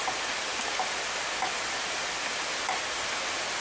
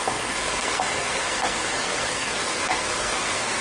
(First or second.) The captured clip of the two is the first